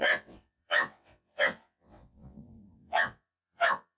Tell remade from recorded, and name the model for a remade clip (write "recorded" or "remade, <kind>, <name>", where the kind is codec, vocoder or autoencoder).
remade, vocoder, WaveNeXt